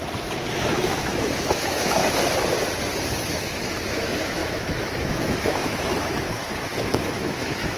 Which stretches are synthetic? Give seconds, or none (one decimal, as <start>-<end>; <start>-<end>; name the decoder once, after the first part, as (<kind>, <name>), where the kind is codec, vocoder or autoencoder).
0.7-2.0 (autoencoder, DAC-VAE); 2.8-7.8